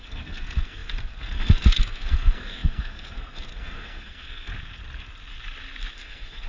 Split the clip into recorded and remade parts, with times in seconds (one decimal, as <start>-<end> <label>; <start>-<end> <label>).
0.0-4.5 remade; 4.5-5.9 recorded; 5.9-6.5 remade